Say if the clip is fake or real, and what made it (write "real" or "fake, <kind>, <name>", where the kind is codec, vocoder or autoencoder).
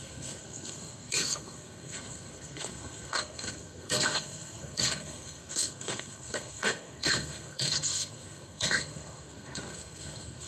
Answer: fake, codec, SNAC